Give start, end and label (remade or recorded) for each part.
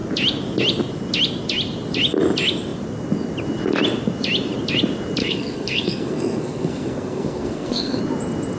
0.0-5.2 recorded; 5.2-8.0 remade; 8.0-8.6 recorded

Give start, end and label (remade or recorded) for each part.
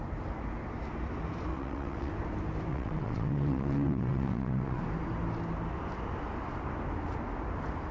0.0-1.5 recorded; 1.5-2.1 remade; 2.1-2.7 recorded; 2.7-4.8 remade; 4.8-7.9 recorded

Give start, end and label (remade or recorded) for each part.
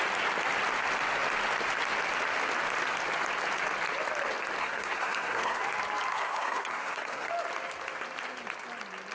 0.0-4.6 recorded; 4.6-5.6 remade; 5.6-6.1 recorded; 6.1-7.3 remade; 7.3-9.1 recorded